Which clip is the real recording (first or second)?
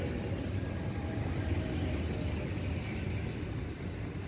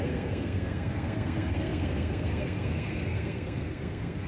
first